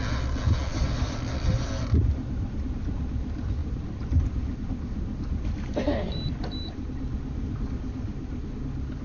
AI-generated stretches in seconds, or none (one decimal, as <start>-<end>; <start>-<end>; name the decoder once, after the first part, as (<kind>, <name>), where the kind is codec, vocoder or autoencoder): 0.7-2.7 (vocoder, BigVGAN v2); 3.6-8.5